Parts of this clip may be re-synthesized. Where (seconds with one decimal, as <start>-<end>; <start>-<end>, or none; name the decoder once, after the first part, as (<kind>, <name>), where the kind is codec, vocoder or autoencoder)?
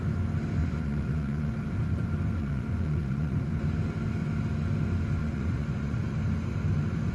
0.6-1.5 (vocoder, Vocos); 2.4-3.5; 5.2-6.2